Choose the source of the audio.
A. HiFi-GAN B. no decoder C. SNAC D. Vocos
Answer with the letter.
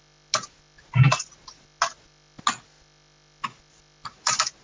B